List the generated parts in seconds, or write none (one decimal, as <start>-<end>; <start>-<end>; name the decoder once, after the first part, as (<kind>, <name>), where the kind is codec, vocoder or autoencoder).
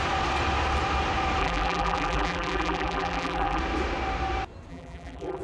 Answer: 1.4-3.6 (vocoder, BigVGAN v2); 4.7-5.4